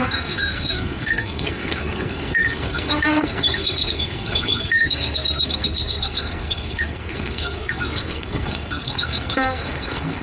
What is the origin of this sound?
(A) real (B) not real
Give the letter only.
B